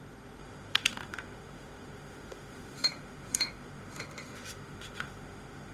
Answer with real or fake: fake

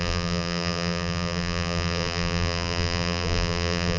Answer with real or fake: fake